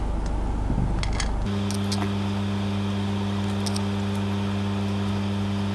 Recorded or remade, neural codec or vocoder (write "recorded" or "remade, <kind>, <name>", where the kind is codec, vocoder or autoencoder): recorded